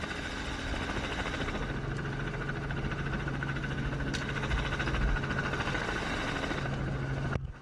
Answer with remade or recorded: recorded